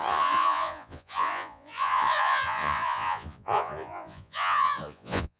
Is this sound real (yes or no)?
no